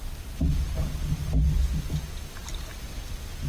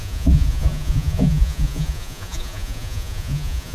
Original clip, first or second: first